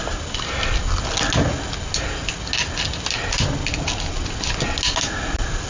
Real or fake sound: real